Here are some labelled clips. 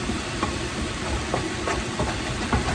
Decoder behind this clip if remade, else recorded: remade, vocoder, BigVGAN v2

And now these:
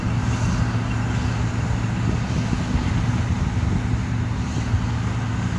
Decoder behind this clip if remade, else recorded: recorded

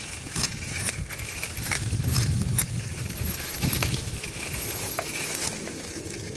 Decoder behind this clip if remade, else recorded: remade, autoencoder, DAC-VAE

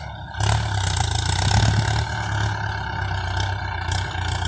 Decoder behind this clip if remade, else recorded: recorded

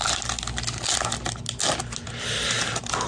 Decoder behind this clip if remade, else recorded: recorded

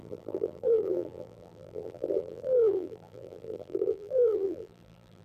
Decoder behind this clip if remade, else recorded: remade, vocoder, BigVGAN v2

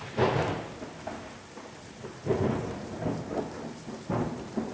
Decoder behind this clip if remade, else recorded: recorded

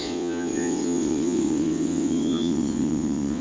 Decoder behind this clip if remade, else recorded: remade, vocoder, WaveNeXt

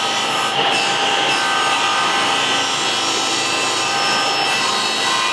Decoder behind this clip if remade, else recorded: recorded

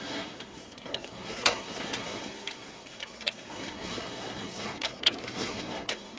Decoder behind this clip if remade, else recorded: remade, codec, SNAC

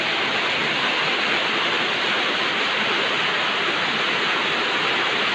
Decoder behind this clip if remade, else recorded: recorded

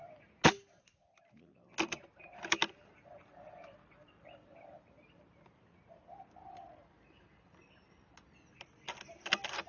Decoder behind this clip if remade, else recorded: recorded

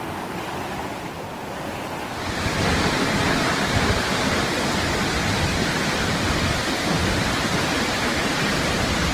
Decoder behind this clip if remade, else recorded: recorded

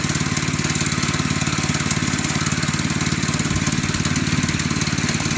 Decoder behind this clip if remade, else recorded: recorded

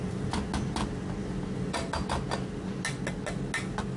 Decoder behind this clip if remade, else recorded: recorded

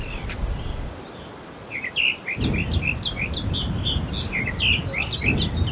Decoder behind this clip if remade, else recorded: recorded